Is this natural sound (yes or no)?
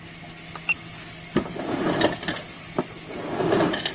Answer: yes